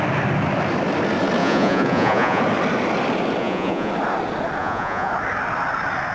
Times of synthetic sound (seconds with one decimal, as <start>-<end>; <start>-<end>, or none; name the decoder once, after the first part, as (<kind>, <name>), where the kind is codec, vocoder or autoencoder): 1.4-2.4 (vocoder, Vocos); 3.4-3.9; 4.6-5.1